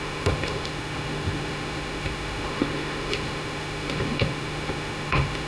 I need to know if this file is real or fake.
fake